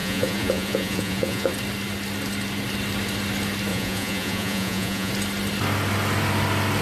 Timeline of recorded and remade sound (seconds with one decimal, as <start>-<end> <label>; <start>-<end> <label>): 0.0-1.5 remade; 1.5-3.7 recorded; 3.7-5.1 remade; 5.1-6.8 recorded